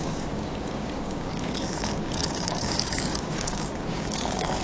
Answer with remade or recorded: remade